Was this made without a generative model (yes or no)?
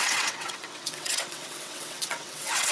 no